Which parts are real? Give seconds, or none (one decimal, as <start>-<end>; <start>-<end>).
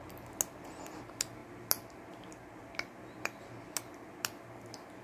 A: 0.0-5.0